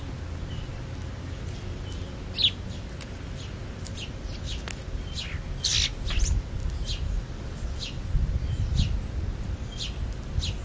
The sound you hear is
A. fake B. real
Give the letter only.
B